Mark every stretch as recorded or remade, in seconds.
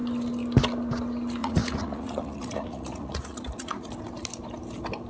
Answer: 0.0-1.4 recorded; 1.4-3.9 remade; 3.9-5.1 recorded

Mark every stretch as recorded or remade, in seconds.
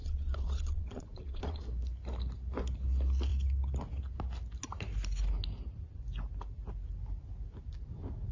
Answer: 0.0-1.6 remade; 1.6-8.3 recorded